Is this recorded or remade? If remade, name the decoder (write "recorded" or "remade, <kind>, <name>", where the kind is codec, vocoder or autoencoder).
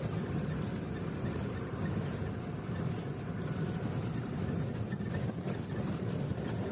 remade, vocoder, BigVGAN v2